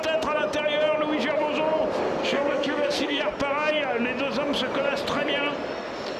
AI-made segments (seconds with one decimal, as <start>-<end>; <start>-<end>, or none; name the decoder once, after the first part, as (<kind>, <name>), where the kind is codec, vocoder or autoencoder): 2.2-3.2 (codec, SNAC)